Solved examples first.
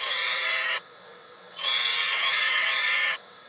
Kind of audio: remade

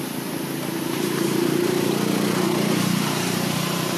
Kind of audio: remade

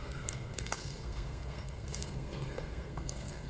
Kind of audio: remade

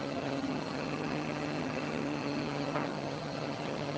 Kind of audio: remade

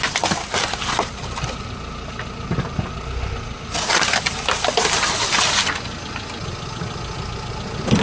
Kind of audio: recorded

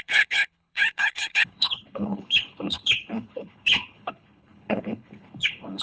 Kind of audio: remade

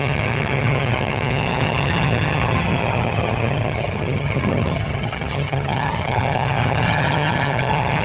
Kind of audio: remade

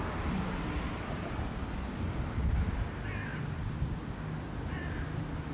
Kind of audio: recorded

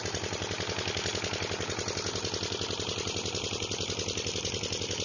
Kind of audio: recorded